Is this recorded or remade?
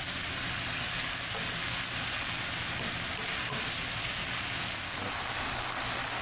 recorded